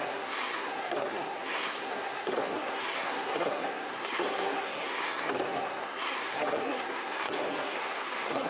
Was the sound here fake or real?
fake